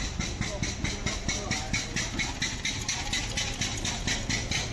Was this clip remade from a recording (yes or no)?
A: no